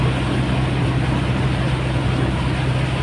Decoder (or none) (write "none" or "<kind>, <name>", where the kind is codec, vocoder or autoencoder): none